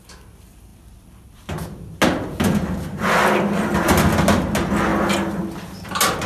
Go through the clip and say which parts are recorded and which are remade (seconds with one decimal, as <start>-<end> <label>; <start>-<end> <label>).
0.0-6.3 recorded